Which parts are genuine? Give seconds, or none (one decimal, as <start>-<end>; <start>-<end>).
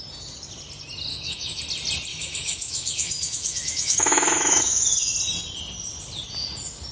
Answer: 0.0-1.1; 1.6-2.1; 5.1-6.9